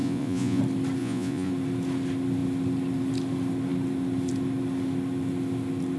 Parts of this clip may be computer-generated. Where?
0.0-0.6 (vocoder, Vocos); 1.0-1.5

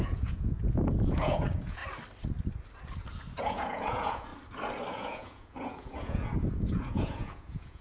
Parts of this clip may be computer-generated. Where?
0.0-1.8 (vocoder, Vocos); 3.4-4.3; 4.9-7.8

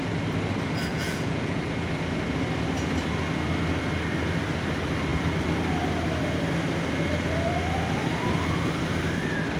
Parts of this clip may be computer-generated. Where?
0.9-1.6 (vocoder, Vocos)

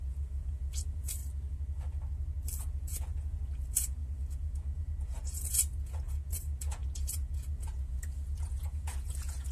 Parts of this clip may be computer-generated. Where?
0.0-1.2 (vocoder, Vocos); 2.6-9.5

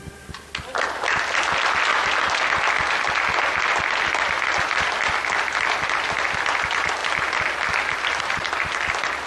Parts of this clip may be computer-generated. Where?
none

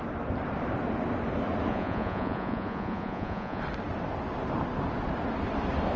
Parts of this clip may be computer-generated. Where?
1.7-3.6 (vocoder, Vocos)